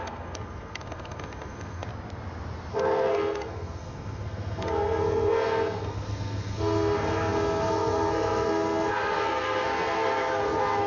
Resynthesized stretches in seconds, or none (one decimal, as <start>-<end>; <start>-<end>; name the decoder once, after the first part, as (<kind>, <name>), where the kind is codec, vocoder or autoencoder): 0.0-1.9 (codec, SNAC); 2.7-10.9